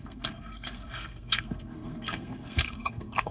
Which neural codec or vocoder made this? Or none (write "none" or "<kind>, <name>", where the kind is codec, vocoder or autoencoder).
codec, SNAC